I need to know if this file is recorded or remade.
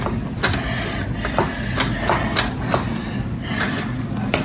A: recorded